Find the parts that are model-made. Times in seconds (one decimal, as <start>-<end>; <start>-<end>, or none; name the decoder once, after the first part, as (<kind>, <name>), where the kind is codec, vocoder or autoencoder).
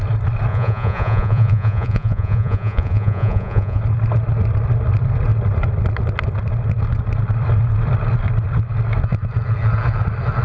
0.5-3.8 (vocoder, Vocos)